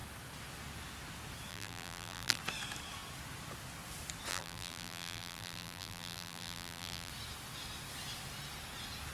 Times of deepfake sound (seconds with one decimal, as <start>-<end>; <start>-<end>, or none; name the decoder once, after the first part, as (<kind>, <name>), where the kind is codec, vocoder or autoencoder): 1.5-2.4 (vocoder, BigVGAN v2); 4.3-7.1